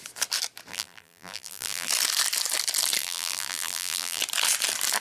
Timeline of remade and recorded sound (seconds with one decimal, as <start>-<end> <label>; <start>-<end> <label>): 0.0-0.7 recorded; 0.7-1.9 remade; 1.9-3.0 recorded; 3.0-4.2 remade; 4.2-5.0 recorded